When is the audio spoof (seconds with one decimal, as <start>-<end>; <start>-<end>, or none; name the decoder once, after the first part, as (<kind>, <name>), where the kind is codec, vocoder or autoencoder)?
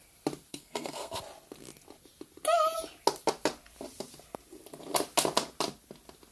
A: 0.5-1.2 (codec, SNAC)